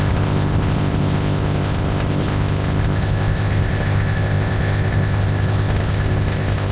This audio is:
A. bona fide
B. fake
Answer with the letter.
B